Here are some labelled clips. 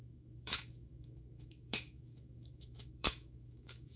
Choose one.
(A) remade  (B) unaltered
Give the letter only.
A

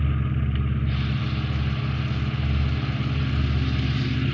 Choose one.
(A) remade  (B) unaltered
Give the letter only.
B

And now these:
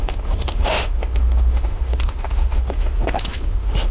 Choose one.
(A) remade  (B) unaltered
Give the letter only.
A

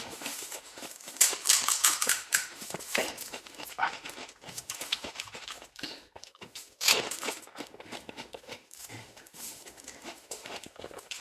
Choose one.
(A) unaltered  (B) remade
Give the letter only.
B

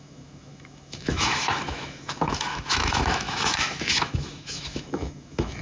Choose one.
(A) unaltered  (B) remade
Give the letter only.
B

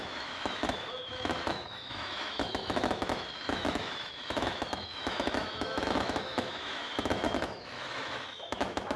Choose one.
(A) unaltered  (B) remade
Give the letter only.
B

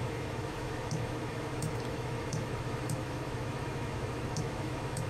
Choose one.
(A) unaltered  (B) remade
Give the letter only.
B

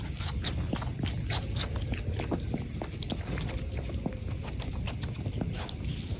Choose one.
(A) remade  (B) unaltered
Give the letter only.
B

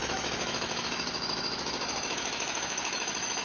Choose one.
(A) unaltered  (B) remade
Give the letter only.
B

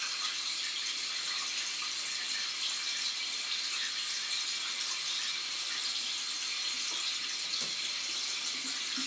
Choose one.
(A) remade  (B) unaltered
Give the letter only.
B